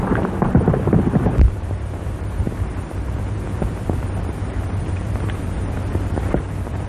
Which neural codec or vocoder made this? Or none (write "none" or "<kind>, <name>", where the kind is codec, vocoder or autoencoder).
vocoder, BigVGAN v2